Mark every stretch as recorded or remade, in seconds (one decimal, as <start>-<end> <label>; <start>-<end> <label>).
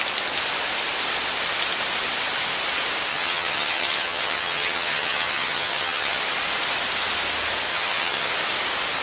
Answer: 0.0-3.1 recorded; 3.1-6.2 remade; 6.2-7.7 recorded; 7.7-8.3 remade; 8.3-9.0 recorded